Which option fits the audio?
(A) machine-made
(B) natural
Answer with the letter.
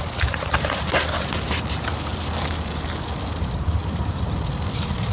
B